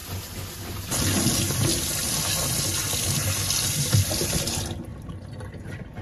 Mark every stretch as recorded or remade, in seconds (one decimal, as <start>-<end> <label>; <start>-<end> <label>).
0.0-6.0 recorded